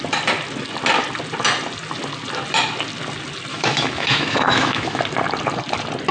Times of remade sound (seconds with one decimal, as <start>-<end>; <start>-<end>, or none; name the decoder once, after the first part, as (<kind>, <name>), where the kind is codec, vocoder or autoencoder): 3.5-5.0 (autoencoder, DAC-VAE)